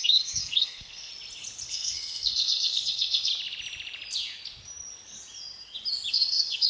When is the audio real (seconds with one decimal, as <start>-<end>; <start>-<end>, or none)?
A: 1.1-1.7; 3.3-6.1